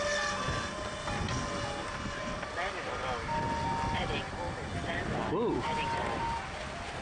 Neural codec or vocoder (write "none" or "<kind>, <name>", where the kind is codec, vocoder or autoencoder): none